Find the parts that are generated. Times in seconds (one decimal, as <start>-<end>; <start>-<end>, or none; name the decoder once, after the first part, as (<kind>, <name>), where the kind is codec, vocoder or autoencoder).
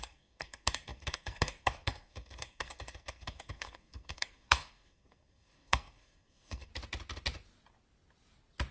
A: 0.0-6.7 (codec, SNAC)